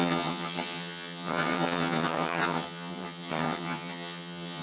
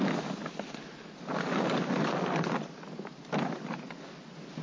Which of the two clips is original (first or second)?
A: second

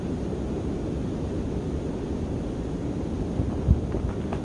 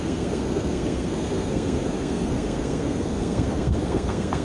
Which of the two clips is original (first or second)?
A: first